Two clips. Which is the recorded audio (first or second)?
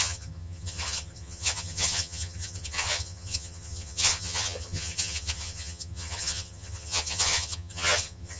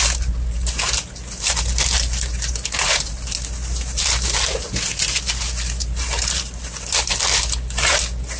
second